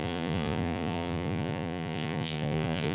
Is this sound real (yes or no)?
no